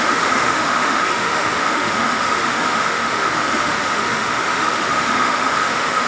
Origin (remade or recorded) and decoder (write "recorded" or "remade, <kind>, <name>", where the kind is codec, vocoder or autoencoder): remade, autoencoder, DAC-VAE